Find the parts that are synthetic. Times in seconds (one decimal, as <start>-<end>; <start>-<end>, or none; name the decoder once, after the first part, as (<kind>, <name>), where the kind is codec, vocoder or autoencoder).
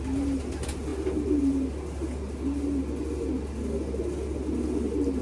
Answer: none